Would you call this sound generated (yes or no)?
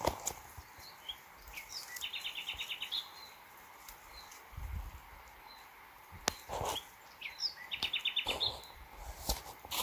no